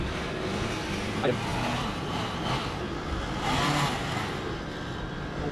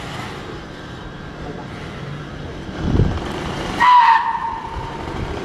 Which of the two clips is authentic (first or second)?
first